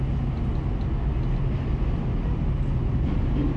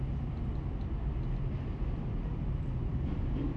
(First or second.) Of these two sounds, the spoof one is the second